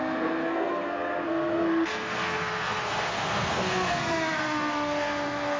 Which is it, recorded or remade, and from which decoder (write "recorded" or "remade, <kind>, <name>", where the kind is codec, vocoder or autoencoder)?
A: remade, codec, SNAC